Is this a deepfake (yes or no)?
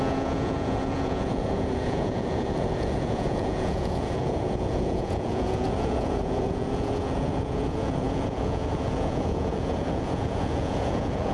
yes